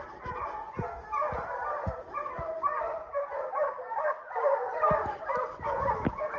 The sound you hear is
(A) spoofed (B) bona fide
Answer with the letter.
B